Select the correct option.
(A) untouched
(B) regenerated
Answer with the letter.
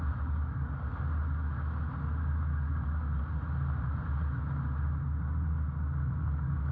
A